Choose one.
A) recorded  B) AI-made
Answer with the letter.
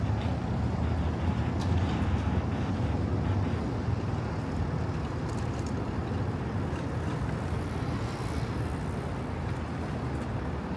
A